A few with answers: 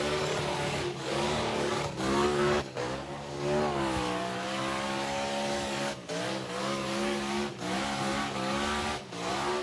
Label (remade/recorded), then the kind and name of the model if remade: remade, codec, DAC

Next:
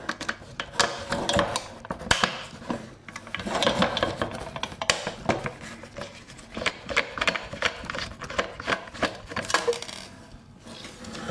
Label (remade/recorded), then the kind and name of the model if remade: recorded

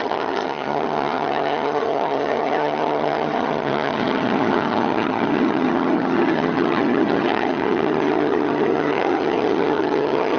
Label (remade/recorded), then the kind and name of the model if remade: remade, vocoder, HiFi-GAN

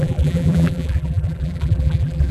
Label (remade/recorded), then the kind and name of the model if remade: remade, vocoder, BigVGAN v2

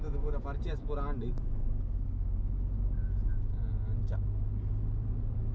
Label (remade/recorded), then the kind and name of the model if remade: recorded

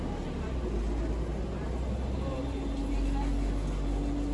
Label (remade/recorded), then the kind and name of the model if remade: recorded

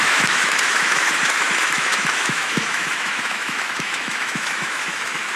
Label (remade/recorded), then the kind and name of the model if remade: remade, autoencoder, DAC-VAE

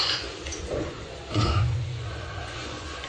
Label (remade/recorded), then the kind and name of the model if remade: remade, vocoder, Vocos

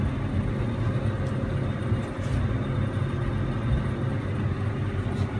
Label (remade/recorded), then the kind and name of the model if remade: recorded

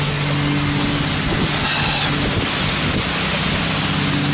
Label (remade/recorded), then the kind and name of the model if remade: recorded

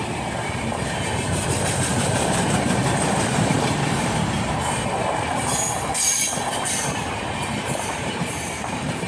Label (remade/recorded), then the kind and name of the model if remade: remade, vocoder, BigVGAN v2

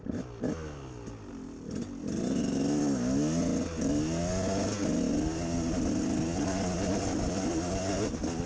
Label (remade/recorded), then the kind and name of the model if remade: recorded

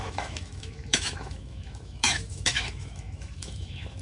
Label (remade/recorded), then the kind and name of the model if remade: remade, autoencoder, DAC-VAE